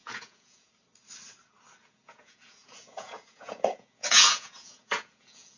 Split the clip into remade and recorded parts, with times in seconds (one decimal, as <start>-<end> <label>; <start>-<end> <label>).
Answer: 0.0-0.7 remade; 0.7-1.8 recorded; 1.8-5.6 remade